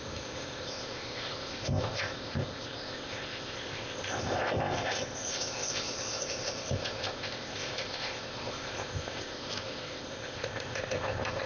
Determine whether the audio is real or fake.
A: fake